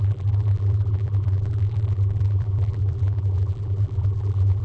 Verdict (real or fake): fake